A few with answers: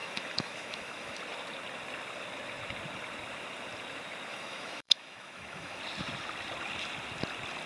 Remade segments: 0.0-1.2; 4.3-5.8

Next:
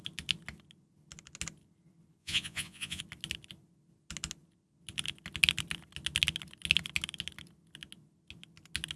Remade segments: 2.2-3.0

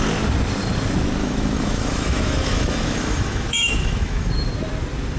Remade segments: 1.2-4.3

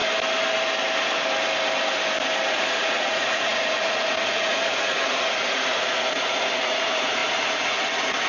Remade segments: 2.5-8.3

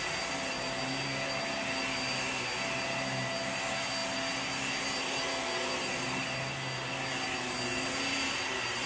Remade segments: none

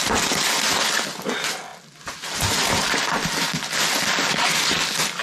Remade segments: none